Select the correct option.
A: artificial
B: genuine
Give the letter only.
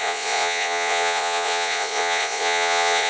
A